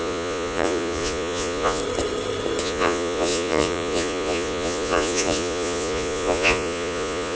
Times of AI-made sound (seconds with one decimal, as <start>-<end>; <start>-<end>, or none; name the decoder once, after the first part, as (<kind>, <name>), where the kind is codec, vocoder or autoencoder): 0.0-1.8 (vocoder, Vocos); 2.6-7.4